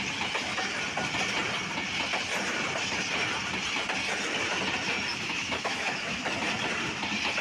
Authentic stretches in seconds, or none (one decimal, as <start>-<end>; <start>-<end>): 0.0-5.1; 6.2-7.4

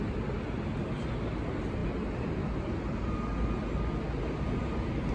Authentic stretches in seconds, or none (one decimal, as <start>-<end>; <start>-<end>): 0.0-5.1

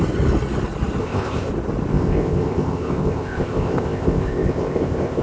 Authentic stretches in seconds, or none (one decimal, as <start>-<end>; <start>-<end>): 0.0-1.0; 1.5-1.9

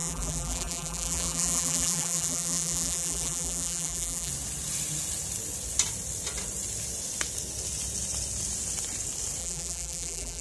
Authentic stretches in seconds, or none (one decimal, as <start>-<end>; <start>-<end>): 4.3-9.4

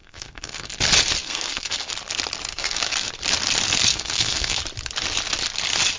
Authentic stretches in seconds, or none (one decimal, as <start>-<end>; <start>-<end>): 0.7-1.2; 1.9-2.5; 3.1-3.9; 4.6-6.0

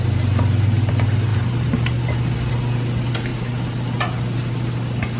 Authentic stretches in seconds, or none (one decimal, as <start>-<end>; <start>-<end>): 0.0-5.2

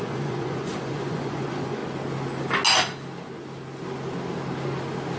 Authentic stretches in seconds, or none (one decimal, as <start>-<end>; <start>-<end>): 1.8-5.2